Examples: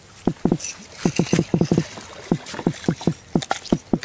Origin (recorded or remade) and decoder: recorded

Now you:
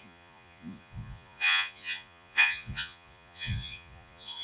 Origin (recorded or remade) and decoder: remade, vocoder, Vocos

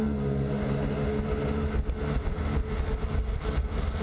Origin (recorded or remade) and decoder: recorded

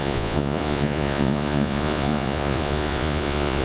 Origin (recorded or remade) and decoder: remade, vocoder, Vocos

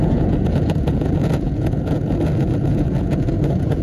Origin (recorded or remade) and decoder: remade, vocoder, Vocos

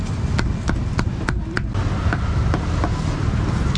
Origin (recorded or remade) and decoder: recorded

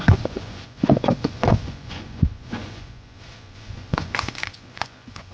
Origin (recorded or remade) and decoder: remade, vocoder, Vocos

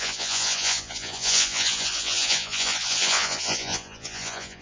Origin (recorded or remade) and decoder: remade, vocoder, Vocos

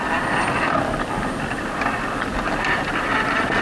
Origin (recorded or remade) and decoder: recorded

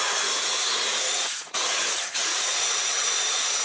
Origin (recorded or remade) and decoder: remade, vocoder, Vocos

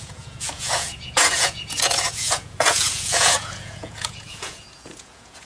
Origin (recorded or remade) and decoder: remade, vocoder, Vocos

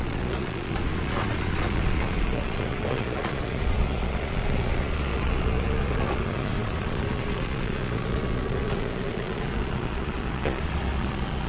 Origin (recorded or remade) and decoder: remade, vocoder, Vocos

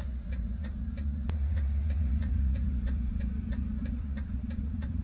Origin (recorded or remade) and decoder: remade, vocoder, Vocos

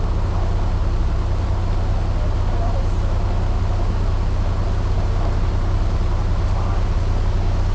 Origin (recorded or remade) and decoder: recorded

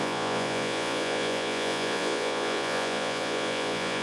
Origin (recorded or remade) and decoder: remade, vocoder, Vocos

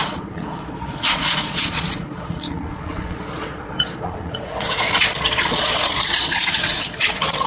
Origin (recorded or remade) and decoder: remade, vocoder, Vocos